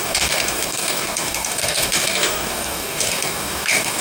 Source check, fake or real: fake